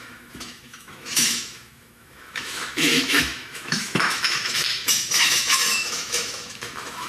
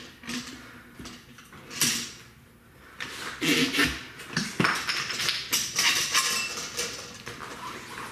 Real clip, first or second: second